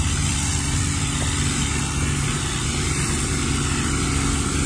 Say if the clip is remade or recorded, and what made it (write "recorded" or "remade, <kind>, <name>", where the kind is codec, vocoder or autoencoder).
recorded